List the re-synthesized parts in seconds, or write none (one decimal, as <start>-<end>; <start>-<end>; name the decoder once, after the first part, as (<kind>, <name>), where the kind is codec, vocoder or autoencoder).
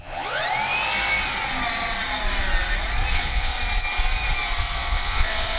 0.0-0.4 (vocoder, Vocos); 3.1-3.5; 4.8-5.6